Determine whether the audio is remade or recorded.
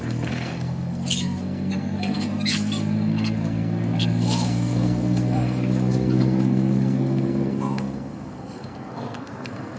remade